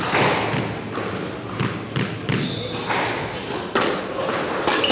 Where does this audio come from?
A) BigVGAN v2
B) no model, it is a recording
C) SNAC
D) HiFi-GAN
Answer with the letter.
B